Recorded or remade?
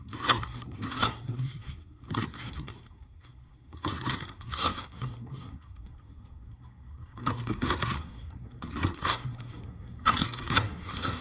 remade